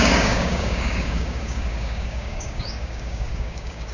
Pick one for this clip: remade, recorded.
remade